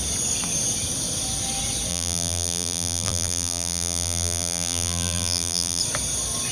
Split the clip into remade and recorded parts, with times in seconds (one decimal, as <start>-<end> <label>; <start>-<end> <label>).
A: 0.0-1.9 recorded; 1.9-5.8 remade; 5.8-6.5 recorded